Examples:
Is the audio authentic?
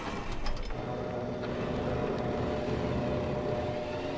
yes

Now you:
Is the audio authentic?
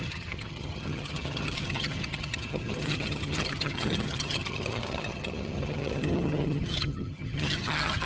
no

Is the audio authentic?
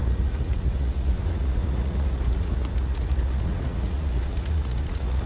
no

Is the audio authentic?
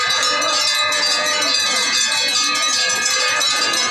no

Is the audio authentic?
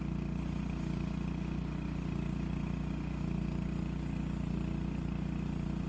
yes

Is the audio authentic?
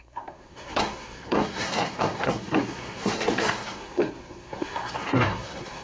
no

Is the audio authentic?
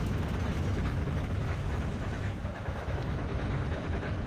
no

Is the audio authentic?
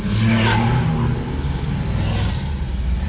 yes